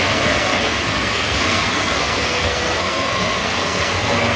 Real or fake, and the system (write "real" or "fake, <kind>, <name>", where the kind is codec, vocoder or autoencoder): fake, codec, SNAC